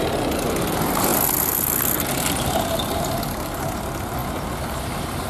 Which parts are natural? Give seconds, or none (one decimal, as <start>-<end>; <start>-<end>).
0.0-5.3